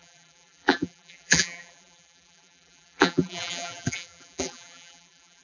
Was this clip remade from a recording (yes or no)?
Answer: yes